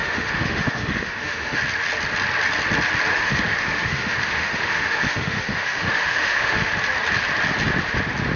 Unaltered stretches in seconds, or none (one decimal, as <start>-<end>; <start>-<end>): 1.6-3.1; 6.7-8.4